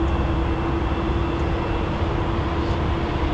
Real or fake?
real